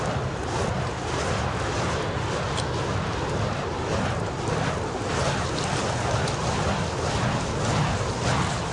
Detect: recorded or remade recorded